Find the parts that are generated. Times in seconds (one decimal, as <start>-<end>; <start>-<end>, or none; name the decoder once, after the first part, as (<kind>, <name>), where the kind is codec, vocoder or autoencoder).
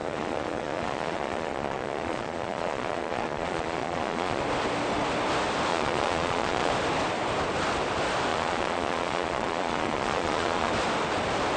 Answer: 0.0-4.4 (vocoder, Vocos); 5.7-6.7; 8.3-10.7